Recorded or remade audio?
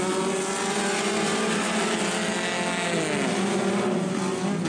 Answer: recorded